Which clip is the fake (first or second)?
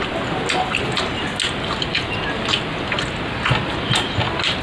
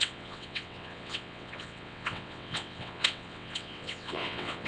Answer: second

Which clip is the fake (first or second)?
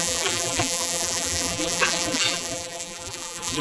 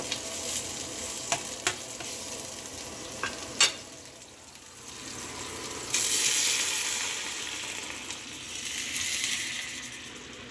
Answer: first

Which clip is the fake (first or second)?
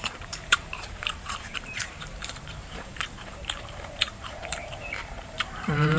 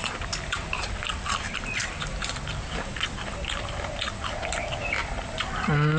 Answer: first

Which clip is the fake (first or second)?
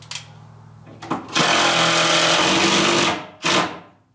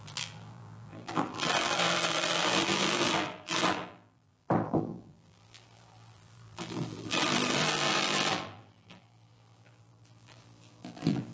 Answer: second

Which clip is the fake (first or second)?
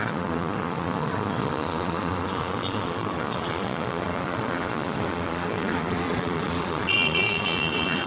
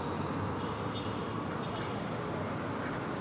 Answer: first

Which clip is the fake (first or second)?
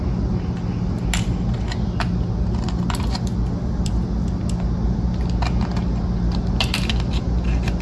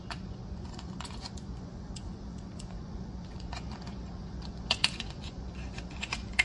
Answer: second